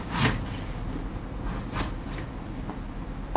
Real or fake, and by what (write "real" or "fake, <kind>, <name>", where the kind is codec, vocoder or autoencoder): real